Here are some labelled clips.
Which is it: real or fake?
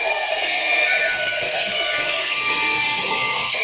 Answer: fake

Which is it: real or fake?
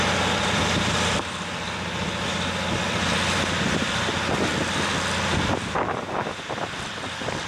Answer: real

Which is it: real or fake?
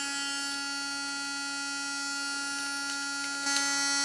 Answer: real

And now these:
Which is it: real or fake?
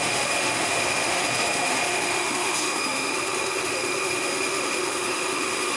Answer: fake